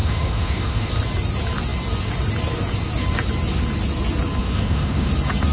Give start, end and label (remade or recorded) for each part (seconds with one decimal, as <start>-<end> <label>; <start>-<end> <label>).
0.0-0.9 remade; 0.9-4.4 recorded; 4.4-5.1 remade; 5.1-5.5 recorded